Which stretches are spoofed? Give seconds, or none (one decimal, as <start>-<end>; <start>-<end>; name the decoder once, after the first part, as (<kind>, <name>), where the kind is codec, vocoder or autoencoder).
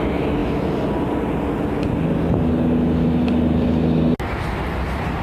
none